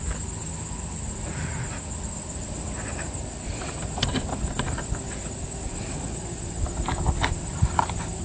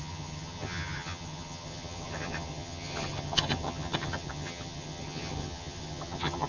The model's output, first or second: second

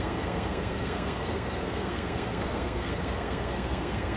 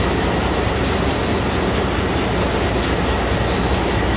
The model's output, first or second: first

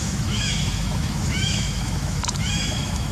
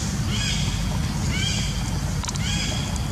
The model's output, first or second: first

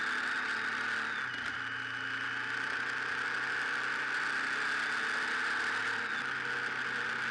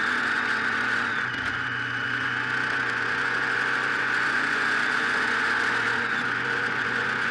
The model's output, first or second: second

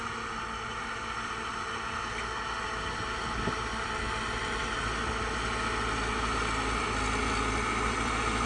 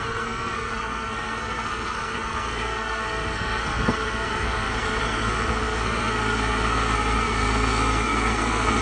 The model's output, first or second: second